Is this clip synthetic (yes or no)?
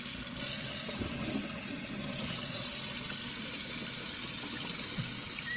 no